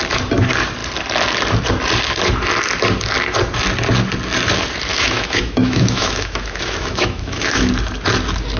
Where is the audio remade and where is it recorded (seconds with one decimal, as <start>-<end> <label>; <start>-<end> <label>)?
0.0-4.9 recorded; 4.9-7.7 remade; 7.7-8.6 recorded